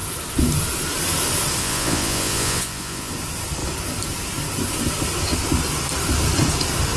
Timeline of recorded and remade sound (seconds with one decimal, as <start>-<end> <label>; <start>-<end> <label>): 0.0-1.6 recorded; 1.6-3.1 remade; 3.1-7.0 recorded